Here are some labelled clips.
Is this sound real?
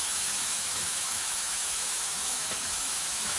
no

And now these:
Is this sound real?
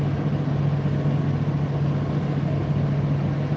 yes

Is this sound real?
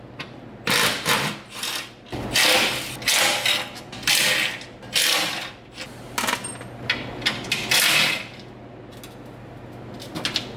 yes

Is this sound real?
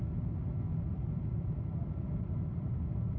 yes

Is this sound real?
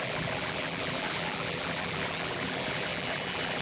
no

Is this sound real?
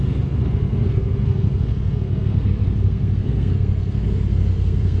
no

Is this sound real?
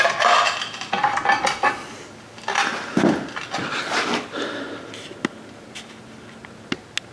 yes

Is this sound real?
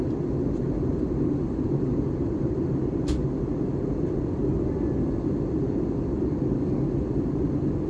yes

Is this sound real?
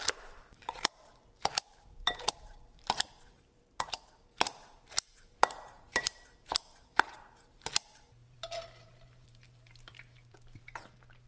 no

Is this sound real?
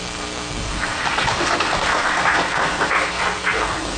no